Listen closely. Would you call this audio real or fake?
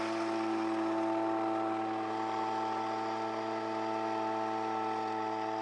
real